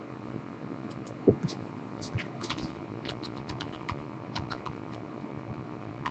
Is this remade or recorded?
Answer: remade